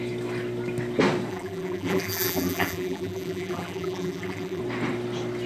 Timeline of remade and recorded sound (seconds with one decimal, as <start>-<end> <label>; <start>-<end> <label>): 0.0-1.3 recorded; 1.3-4.6 remade; 4.6-5.5 recorded